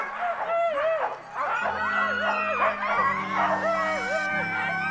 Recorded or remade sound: recorded